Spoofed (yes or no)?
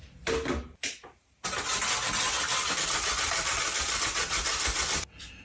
no